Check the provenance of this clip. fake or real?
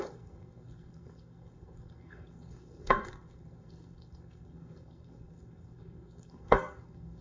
fake